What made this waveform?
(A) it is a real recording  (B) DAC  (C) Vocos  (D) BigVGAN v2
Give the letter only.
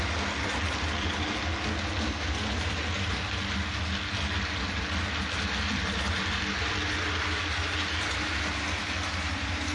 A